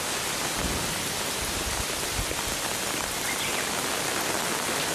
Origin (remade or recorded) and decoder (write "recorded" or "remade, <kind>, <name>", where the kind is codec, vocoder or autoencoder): recorded